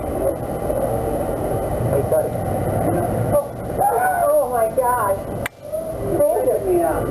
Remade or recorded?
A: recorded